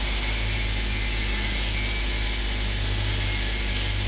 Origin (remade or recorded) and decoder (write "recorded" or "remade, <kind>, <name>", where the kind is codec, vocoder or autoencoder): recorded